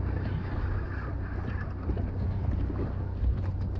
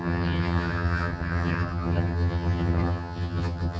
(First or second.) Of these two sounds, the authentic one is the first